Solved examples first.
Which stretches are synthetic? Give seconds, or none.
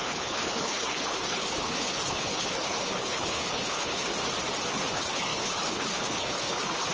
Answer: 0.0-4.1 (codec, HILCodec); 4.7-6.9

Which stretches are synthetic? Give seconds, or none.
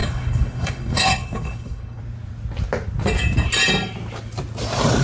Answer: 0.0-2.0 (codec, HILCodec)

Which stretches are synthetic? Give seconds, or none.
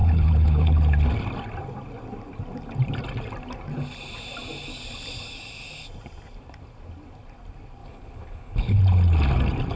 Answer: 0.0-0.8 (codec, HILCodec); 7.8-8.8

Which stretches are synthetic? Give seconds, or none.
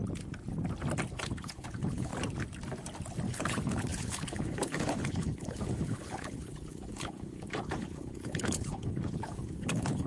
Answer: 1.2-2.1 (codec, HILCodec); 3.3-10.1